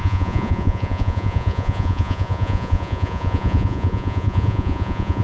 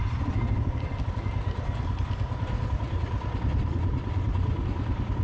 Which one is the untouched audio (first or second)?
second